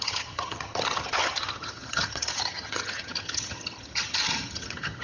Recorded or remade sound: remade